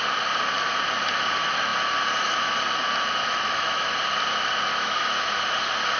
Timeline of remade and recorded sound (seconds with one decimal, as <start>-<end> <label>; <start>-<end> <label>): 0.0-3.2 recorded; 3.2-3.9 remade; 3.9-4.7 recorded; 4.7-5.4 remade; 5.4-6.0 recorded